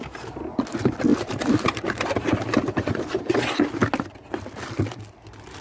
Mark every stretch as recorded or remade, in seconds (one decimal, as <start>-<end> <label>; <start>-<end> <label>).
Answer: 0.0-1.1 recorded; 1.1-3.2 remade; 3.2-5.6 recorded